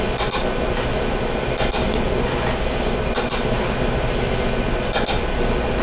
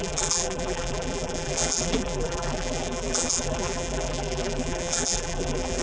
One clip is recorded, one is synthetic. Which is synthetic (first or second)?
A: second